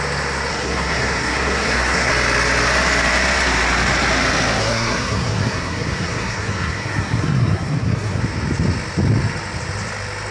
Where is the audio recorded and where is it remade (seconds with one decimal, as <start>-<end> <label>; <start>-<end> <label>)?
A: 0.0-0.5 recorded; 0.5-2.1 remade; 2.1-4.6 recorded; 4.6-8.2 remade; 8.2-10.3 recorded